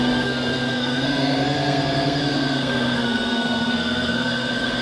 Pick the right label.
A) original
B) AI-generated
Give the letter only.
B